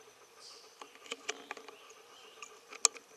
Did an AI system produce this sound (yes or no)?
no